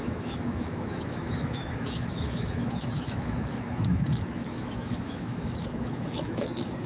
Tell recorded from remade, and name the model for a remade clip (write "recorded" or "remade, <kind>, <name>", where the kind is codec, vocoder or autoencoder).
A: remade, autoencoder, DAC-VAE